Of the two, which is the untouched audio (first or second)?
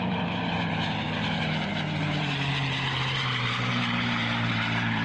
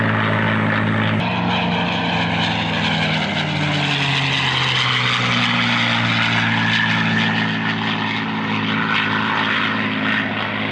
second